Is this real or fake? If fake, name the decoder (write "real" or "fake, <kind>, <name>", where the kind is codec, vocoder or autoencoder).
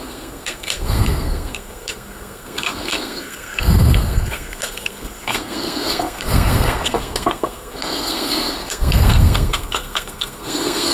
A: fake, codec, SNAC